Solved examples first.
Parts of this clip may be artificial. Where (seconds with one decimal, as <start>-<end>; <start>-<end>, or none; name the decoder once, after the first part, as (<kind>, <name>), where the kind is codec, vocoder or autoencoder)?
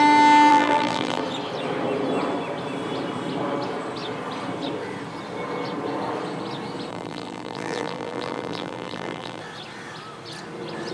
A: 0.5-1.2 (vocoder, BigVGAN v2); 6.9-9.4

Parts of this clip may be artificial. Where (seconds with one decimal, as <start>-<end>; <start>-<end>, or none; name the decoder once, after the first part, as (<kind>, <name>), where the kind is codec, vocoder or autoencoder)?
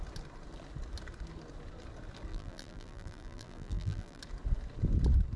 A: 2.3-4.2 (vocoder, BigVGAN v2)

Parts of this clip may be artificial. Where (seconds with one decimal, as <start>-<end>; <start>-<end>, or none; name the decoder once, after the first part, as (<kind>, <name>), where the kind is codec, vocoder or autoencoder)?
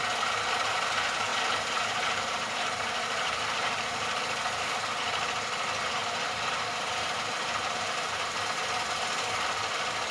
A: 1.3-4.2 (vocoder, BigVGAN v2); 6.0-8.4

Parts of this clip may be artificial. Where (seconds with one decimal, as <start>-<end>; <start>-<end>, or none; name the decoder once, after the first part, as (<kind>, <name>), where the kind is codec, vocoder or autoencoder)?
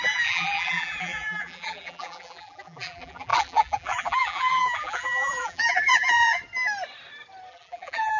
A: 0.0-6.4 (vocoder, BigVGAN v2); 7.5-8.2